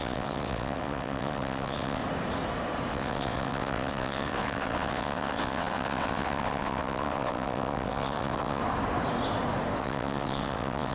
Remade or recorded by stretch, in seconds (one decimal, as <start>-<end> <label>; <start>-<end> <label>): 0.0-2.0 remade; 2.0-2.9 recorded; 2.9-8.6 remade; 8.6-9.8 recorded; 9.8-10.9 remade

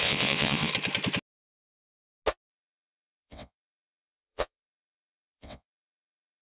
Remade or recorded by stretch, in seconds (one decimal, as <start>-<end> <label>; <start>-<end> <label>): 0.0-0.7 remade; 0.7-2.5 recorded; 2.5-6.4 remade

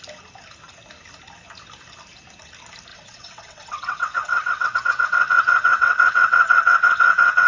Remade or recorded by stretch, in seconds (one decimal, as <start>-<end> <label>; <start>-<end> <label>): 0.0-2.9 recorded; 2.9-7.5 remade

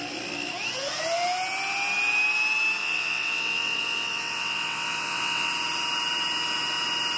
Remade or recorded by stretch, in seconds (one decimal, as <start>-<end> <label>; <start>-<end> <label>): 0.0-2.8 recorded; 2.8-5.5 remade; 5.5-7.2 recorded

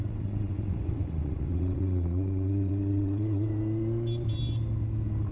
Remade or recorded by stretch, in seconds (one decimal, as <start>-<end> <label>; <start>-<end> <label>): 0.0-3.5 remade; 3.5-5.3 recorded

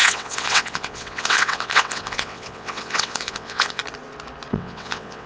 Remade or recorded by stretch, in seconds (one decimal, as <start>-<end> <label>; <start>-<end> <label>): 0.0-3.8 remade; 3.8-4.5 recorded; 4.5-5.3 remade